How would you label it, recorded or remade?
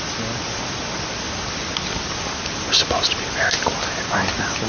recorded